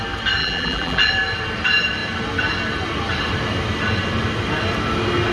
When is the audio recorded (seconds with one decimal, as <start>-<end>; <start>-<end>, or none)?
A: 0.0-0.4; 1.1-5.3